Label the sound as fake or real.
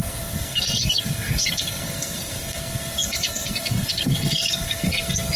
fake